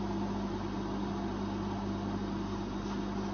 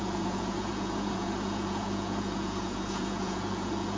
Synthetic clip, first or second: second